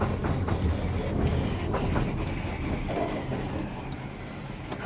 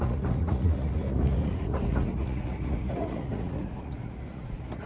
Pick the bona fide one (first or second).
first